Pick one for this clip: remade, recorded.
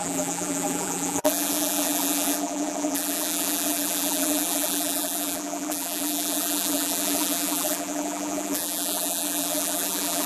remade